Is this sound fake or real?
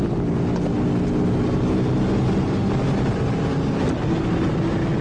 real